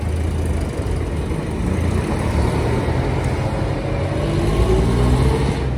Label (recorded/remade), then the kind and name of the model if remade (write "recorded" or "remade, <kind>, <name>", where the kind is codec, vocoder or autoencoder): recorded